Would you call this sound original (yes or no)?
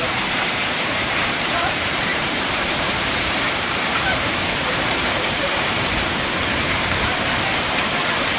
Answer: no